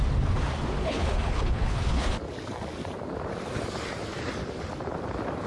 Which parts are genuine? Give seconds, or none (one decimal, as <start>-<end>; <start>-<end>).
0.0-0.8; 2.1-5.5